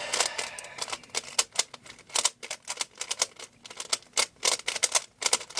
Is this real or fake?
real